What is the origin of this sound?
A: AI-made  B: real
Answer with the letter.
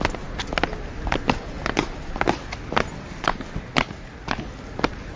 B